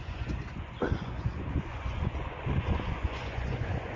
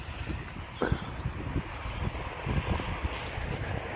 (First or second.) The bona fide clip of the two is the second